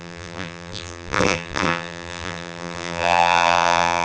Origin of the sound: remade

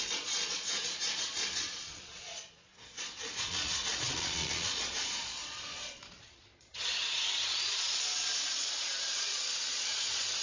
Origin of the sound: remade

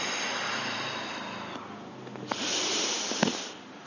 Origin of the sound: recorded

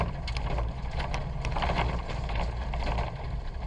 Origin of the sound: recorded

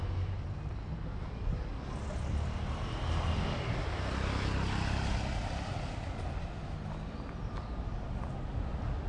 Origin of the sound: recorded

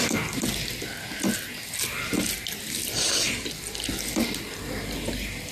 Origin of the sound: recorded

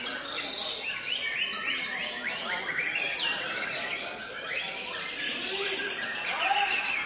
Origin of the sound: remade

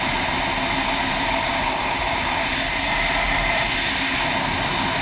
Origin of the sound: recorded